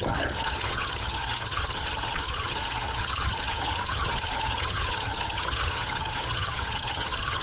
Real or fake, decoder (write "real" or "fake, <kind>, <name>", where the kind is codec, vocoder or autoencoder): fake, vocoder, HiFi-GAN